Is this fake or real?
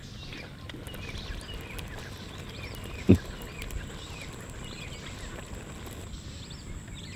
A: real